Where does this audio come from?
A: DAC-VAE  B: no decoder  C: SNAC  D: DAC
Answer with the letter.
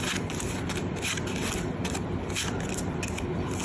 B